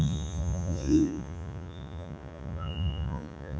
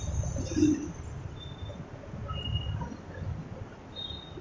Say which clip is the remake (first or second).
first